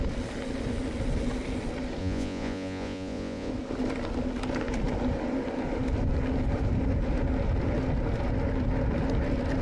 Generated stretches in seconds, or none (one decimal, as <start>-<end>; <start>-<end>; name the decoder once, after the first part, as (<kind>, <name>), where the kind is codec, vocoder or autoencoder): 2.0-3.5 (vocoder, Vocos)